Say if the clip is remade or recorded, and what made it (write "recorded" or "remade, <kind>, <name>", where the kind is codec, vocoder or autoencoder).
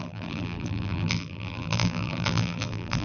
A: remade, vocoder, BigVGAN v2